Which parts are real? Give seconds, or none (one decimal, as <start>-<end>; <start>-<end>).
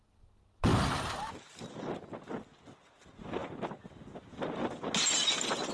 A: 0.0-5.7